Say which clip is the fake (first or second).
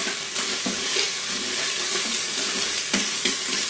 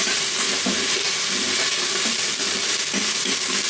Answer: first